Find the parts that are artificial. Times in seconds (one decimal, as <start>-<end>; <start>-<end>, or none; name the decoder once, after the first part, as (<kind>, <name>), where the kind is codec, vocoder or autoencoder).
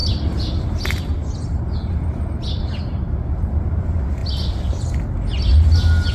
none